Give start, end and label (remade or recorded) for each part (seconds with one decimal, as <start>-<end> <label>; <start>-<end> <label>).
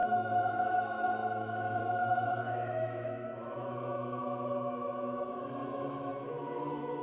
0.0-7.0 remade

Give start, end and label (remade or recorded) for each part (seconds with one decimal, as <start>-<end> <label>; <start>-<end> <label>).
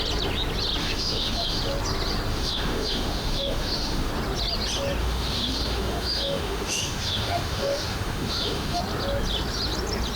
0.0-0.8 recorded; 0.8-1.6 remade; 1.6-2.3 recorded; 2.3-4.1 remade; 4.1-5.0 recorded; 5.0-8.8 remade; 8.8-10.2 recorded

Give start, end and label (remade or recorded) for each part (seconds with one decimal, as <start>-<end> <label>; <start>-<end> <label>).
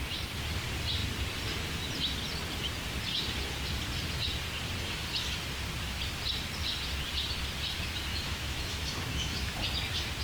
0.0-8.1 recorded; 8.1-9.6 remade; 9.6-10.2 recorded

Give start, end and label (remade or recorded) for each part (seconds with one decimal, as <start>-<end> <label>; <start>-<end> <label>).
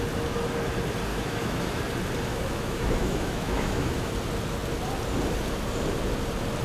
0.0-1.1 recorded; 1.1-1.8 remade; 1.8-2.3 recorded; 2.3-4.1 remade; 4.1-6.6 recorded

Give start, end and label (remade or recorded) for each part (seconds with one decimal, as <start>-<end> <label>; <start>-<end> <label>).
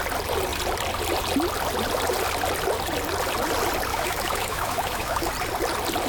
0.0-3.9 recorded; 3.9-5.3 remade; 5.3-6.1 recorded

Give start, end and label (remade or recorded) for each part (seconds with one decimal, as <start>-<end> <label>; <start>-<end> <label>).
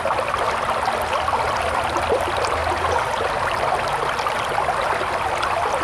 0.0-5.8 recorded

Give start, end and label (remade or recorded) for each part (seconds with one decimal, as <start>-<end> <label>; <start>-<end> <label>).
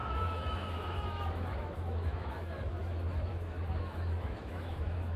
0.0-5.2 remade